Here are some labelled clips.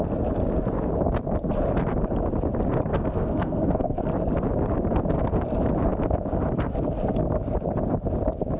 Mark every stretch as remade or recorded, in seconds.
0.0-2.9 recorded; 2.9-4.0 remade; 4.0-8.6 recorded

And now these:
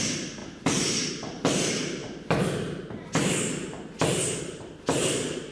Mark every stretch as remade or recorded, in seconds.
0.0-5.5 recorded